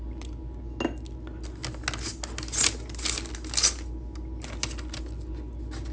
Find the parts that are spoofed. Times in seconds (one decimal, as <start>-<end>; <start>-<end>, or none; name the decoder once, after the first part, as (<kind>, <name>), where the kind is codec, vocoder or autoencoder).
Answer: none